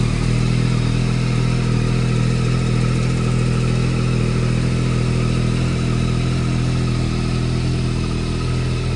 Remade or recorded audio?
recorded